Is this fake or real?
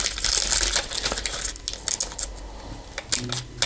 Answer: real